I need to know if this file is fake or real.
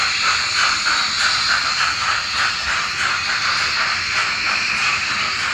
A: real